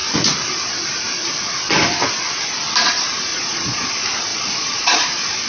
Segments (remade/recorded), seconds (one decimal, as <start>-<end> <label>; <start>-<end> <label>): 0.0-3.3 recorded; 3.3-3.9 remade; 3.9-4.3 recorded; 4.3-5.1 remade; 5.1-5.5 recorded